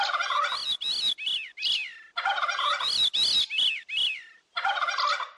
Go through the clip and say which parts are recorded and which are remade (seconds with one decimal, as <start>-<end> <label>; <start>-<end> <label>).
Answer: 0.0-5.4 recorded